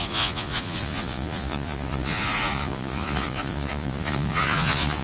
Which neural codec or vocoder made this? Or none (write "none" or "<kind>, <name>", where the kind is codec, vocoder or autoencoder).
vocoder, Vocos